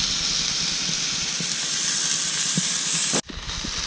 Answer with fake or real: real